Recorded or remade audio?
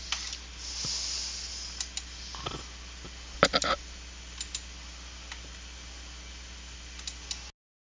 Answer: recorded